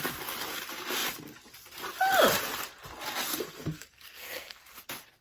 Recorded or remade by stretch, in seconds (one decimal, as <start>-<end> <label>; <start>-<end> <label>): 0.0-3.3 recorded; 3.3-4.6 remade; 4.6-5.2 recorded